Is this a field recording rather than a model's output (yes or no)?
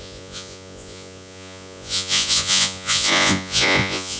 no